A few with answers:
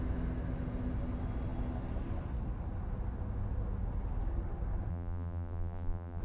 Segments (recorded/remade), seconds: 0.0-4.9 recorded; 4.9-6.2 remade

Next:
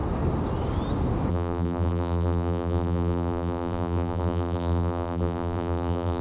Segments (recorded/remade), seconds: 0.0-1.3 recorded; 1.3-6.2 remade

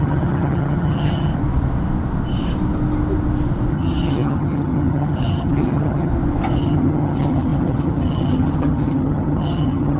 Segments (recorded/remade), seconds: 0.0-1.3 remade; 1.3-3.7 recorded; 3.7-6.1 remade; 6.1-6.6 recorded; 6.6-10.0 remade

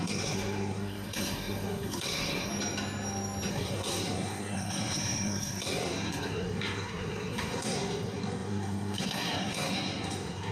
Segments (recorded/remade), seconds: 0.0-2.5 remade; 2.5-3.5 recorded; 3.5-10.5 remade

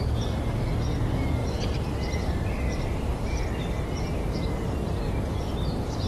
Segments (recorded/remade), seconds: 0.0-1.4 recorded; 1.4-3.4 remade; 3.4-6.1 recorded